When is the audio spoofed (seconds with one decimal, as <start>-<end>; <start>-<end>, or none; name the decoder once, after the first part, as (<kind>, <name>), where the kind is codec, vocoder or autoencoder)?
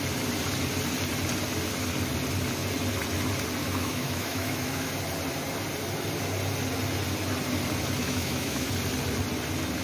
3.6-4.9 (autoencoder, DAC-VAE); 8.0-8.7